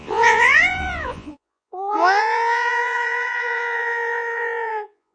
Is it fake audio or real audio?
fake